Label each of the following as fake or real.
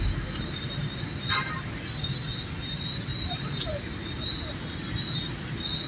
real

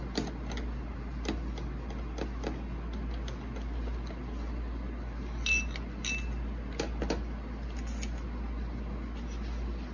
real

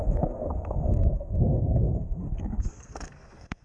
fake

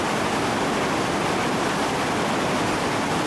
real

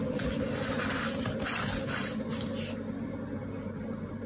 real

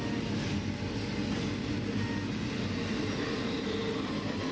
real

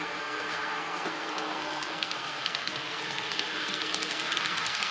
fake